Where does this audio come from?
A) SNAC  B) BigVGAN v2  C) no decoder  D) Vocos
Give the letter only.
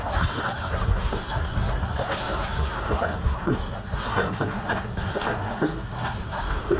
A